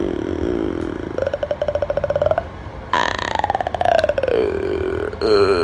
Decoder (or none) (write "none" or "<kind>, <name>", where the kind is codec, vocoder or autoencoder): none